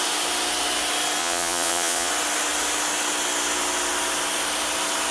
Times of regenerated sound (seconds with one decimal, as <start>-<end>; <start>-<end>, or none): 1.2-2.1

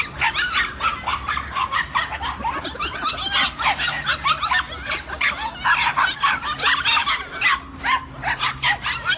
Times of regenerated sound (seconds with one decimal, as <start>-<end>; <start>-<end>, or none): none